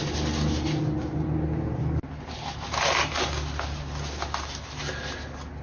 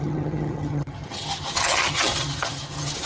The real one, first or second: first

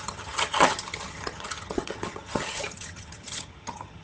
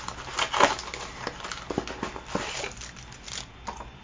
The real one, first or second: second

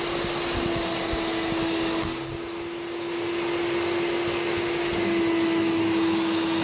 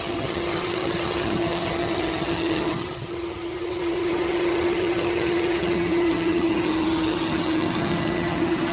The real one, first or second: first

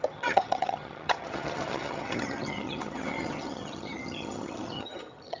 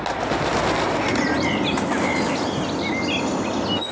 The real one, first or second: second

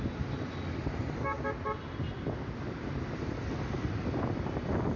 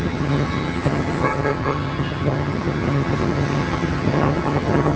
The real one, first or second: first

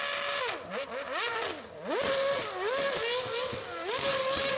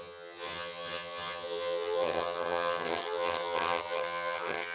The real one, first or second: first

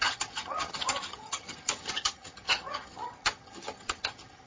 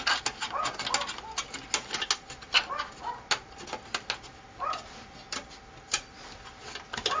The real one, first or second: second